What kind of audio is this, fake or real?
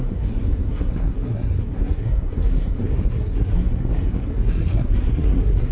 fake